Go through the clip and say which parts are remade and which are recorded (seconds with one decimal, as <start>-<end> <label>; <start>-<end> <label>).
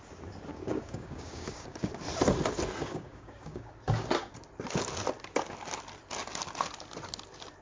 0.0-0.5 recorded; 0.5-1.9 remade; 1.9-2.8 recorded; 2.8-3.7 remade; 3.7-7.6 recorded